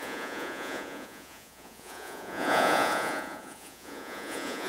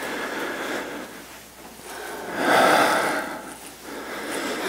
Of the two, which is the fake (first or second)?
first